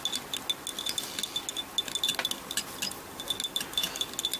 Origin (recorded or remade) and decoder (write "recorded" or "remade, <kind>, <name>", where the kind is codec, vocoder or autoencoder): recorded